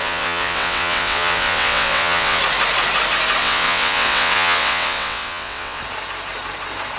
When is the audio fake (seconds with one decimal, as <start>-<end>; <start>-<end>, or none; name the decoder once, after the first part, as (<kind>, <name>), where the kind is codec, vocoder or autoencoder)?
0.0-2.4 (vocoder, WaveNeXt); 3.4-5.8